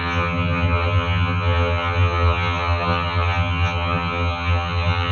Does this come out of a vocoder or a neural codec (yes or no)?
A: yes